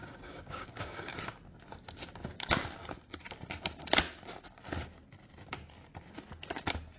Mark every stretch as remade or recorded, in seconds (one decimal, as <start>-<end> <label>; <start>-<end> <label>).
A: 0.0-1.1 remade; 1.1-7.0 recorded